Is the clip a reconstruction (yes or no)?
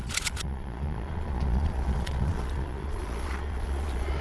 yes